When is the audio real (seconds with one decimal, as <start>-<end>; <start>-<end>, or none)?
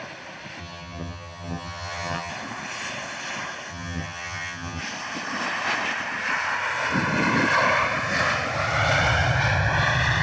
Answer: 0.0-0.6; 2.3-3.7; 4.8-10.2